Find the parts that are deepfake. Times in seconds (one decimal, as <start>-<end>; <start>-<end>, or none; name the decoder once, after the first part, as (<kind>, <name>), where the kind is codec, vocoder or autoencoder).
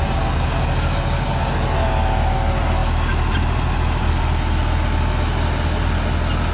none